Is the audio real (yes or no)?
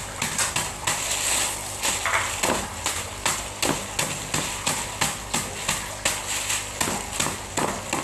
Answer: yes